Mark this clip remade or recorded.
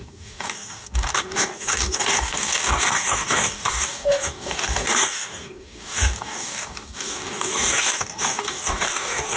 remade